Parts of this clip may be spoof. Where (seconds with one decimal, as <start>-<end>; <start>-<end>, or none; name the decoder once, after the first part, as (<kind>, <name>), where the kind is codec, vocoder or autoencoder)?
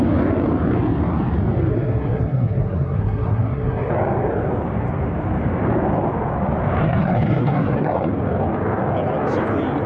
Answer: 1.7-3.9 (codec, SNAC); 6.8-8.1